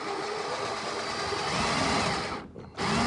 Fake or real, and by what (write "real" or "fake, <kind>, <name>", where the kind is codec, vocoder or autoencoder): real